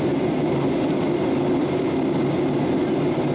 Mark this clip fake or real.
real